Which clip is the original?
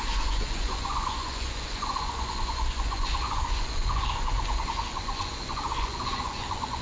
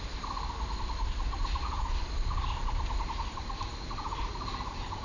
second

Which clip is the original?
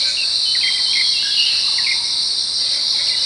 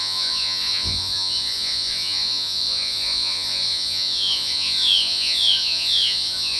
first